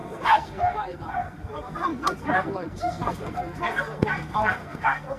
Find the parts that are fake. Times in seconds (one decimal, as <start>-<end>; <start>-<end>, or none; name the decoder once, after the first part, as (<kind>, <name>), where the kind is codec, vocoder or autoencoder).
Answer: 0.0-5.2 (codec, SNAC)